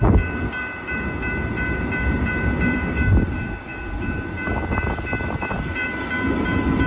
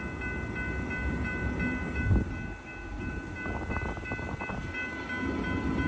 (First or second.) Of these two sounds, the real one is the second